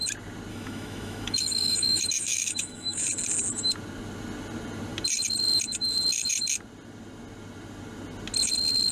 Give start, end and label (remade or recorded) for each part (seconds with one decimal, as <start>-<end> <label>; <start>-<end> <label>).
0.0-0.5 recorded; 0.5-3.0 remade; 3.0-8.9 recorded